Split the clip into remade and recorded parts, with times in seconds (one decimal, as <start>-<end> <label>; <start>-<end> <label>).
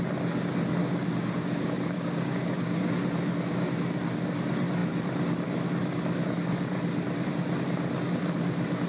0.0-0.8 recorded; 0.8-2.9 remade; 2.9-8.9 recorded